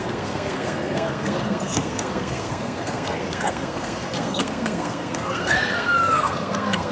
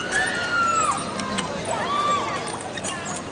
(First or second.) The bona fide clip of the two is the second